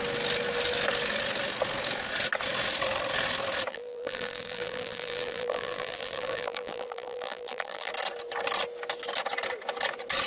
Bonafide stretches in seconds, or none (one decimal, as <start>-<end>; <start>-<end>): 0.0-3.7; 7.9-10.3